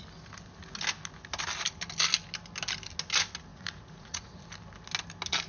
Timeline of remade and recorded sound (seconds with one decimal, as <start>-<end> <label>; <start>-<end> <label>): 0.0-3.5 recorded; 3.5-4.4 remade; 4.4-5.5 recorded